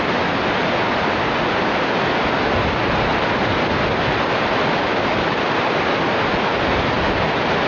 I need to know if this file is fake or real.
real